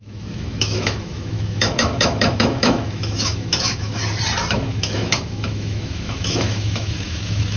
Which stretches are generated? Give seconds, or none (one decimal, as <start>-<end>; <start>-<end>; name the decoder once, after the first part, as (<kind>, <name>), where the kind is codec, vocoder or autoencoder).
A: 0.0-4.0 (autoencoder, DAC-VAE); 4.5-7.6